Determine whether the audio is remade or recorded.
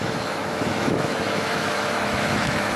remade